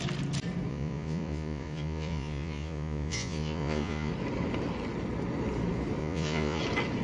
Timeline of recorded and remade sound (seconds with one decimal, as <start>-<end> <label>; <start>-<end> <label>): 0.0-0.7 recorded; 0.7-4.1 remade; 4.1-6.0 recorded; 6.0-6.6 remade; 6.6-7.0 recorded